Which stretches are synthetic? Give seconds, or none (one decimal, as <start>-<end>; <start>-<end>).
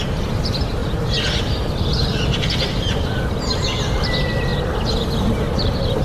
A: 0.0-0.8; 1.4-4.5; 5.2-6.0